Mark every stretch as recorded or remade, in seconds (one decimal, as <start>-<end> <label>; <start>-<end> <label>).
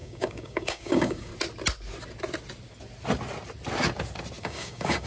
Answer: 0.0-1.3 remade; 1.3-4.4 recorded; 4.4-5.1 remade